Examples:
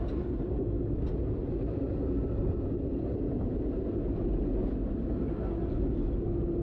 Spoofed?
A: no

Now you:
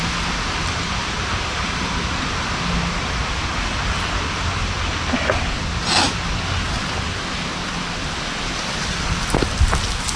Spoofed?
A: no